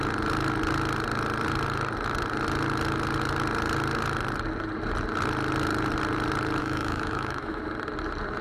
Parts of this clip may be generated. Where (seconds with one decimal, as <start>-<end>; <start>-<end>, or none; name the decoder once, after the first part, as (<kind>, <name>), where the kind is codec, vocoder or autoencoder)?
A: 6.6-7.6 (autoencoder, DAC-VAE)